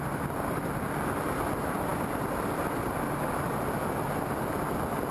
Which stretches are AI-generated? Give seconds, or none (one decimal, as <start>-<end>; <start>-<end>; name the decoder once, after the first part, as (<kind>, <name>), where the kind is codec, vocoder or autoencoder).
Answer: none